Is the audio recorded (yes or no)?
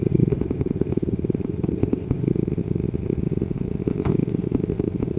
no